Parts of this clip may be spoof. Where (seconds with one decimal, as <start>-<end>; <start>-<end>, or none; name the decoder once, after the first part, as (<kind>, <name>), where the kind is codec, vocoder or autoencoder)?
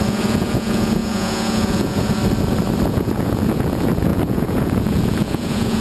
0.0-2.2 (vocoder, Vocos); 2.9-5.8